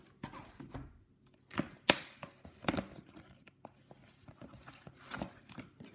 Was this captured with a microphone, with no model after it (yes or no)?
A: yes